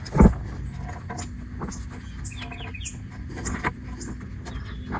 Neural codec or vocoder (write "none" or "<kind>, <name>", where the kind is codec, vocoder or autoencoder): none